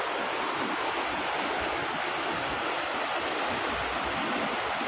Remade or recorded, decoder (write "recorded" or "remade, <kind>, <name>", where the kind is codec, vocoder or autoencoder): recorded